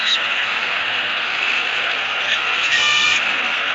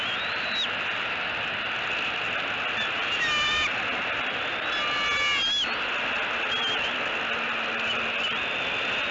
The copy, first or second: first